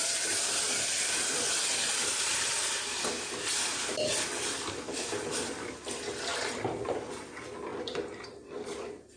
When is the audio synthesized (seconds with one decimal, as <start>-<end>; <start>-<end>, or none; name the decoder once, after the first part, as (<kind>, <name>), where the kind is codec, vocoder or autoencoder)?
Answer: 2.3-4.1 (vocoder, BigVGAN v2); 7.7-9.2